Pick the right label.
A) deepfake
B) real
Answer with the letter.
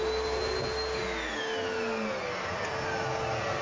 B